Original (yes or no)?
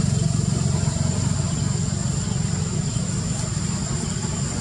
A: yes